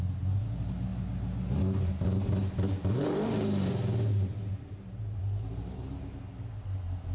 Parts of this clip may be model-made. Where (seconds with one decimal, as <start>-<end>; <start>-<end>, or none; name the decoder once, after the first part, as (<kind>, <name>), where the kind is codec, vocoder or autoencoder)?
none